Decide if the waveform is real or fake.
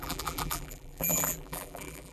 fake